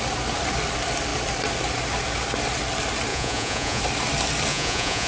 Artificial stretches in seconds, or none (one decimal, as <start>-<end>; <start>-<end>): 3.1-3.8; 4.5-5.1